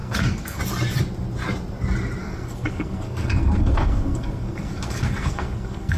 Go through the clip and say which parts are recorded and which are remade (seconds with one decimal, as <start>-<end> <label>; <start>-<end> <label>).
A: 0.0-0.6 remade; 0.6-2.2 recorded; 2.2-6.0 remade